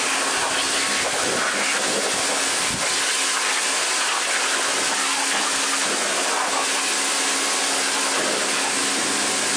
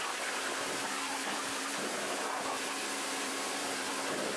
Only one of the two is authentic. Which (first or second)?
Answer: first